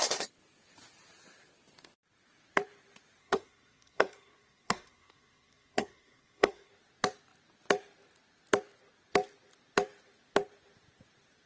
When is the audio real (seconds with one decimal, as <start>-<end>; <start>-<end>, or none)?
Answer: 0.0-3.2; 6.7-11.5